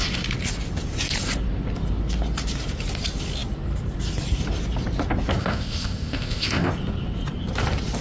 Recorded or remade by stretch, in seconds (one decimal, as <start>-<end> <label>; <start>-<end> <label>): 0.0-5.4 recorded; 5.4-6.7 remade; 6.7-8.0 recorded